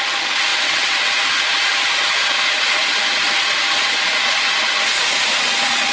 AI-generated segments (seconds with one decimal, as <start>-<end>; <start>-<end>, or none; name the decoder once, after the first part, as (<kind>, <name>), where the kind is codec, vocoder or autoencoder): 0.5-1.1 (vocoder, WaveNeXt)